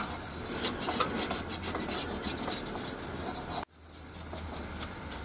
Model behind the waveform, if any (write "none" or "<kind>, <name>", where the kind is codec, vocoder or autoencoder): none